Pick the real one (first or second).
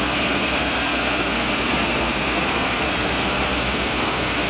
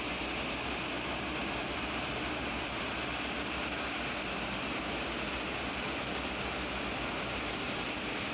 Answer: second